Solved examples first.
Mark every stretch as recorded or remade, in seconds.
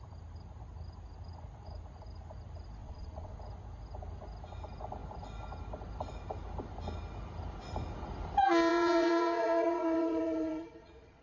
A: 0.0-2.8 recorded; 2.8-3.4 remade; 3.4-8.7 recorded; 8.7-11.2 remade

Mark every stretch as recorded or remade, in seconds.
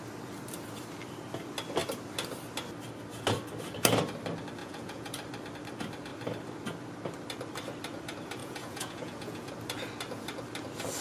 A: 0.0-4.6 recorded; 4.6-5.1 remade; 5.1-8.4 recorded; 8.4-9.5 remade; 9.5-11.0 recorded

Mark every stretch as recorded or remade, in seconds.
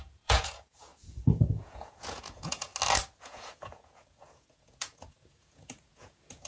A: 0.0-2.7 remade; 2.7-3.2 recorded; 3.2-6.5 remade